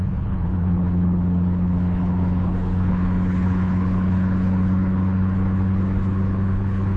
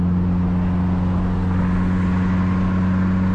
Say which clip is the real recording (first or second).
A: second